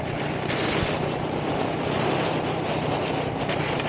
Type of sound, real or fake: fake